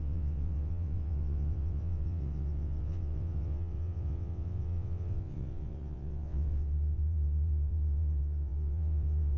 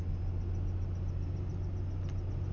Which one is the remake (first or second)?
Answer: first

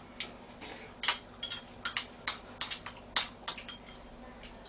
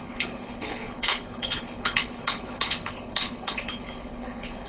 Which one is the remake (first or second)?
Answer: second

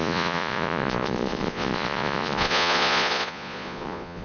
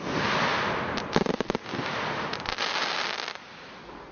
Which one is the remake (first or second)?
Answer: first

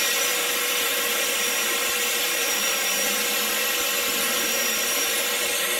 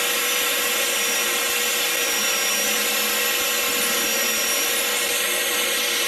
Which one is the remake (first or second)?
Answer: first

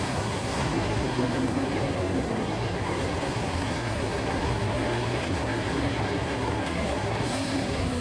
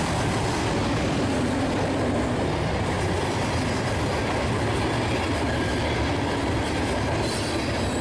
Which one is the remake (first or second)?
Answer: first